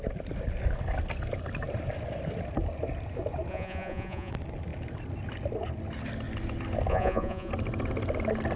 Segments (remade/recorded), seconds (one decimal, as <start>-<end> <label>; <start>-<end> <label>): 0.0-3.5 recorded; 3.5-4.3 remade; 4.3-6.9 recorded; 6.9-7.5 remade; 7.5-8.6 recorded